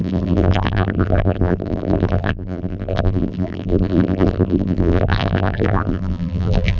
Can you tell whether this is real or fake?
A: fake